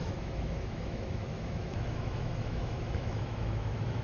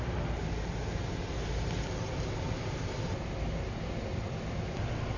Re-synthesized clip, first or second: first